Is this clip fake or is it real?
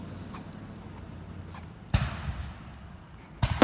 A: real